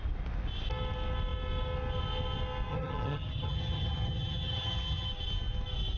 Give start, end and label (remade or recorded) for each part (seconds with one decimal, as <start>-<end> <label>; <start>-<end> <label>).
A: 0.0-2.7 recorded; 2.7-5.1 remade; 5.1-6.0 recorded